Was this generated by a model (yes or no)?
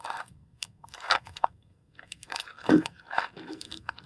yes